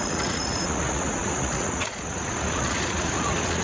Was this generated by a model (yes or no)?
yes